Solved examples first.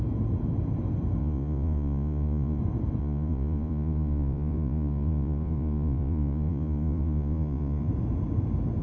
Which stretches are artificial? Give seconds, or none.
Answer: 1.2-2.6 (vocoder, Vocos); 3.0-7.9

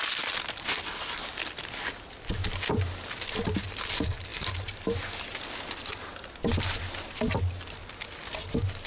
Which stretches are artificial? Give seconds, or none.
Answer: none

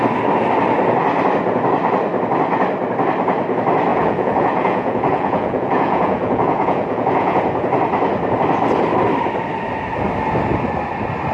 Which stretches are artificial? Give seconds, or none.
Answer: 3.9-7.5 (vocoder, Vocos)

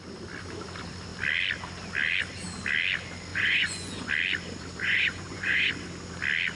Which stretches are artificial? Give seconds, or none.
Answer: 3.3-4.1 (vocoder, Vocos); 4.8-5.7

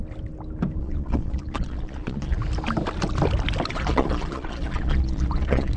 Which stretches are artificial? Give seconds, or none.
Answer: 0.8-2.4 (vocoder, Vocos); 3.7-5.8

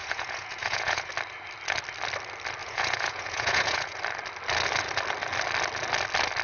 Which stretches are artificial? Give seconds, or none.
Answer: 0.0-1.1 (vocoder, Vocos); 2.6-4.0